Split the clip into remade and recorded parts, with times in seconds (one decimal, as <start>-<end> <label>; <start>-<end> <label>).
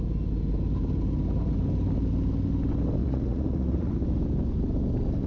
0.0-3.0 recorded; 3.0-4.0 remade; 4.0-5.3 recorded